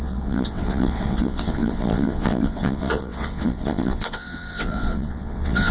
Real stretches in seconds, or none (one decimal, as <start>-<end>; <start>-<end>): none